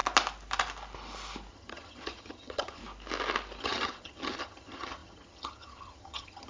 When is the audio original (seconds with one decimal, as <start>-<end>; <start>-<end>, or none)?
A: 0.0-1.5; 2.8-3.6